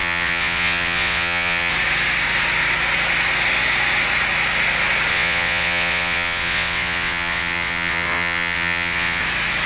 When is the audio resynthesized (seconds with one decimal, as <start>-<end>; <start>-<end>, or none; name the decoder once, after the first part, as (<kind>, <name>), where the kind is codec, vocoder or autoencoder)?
0.0-1.7 (vocoder, WaveNeXt); 5.1-9.2